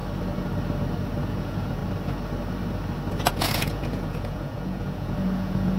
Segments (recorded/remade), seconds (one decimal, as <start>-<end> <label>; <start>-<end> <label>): 0.0-1.2 recorded; 1.2-1.8 remade; 1.8-3.3 recorded; 3.3-5.8 remade